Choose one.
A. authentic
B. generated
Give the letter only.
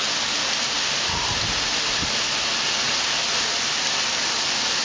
A